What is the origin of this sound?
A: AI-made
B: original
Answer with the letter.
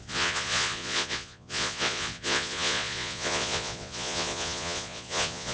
A